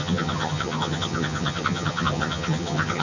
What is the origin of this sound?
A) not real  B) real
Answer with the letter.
A